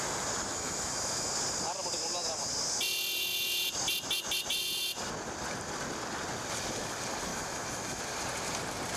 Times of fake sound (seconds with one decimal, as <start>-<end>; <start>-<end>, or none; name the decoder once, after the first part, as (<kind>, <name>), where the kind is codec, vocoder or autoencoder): 0.5-1.3 (autoencoder, DAC-VAE); 7.3-8.0